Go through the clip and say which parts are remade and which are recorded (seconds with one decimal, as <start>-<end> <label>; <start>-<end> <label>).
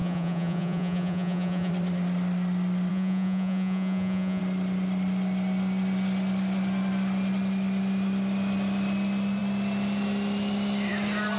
0.0-1.7 remade; 1.7-2.9 recorded; 2.9-4.4 remade; 4.4-11.4 recorded